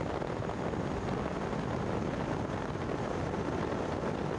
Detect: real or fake real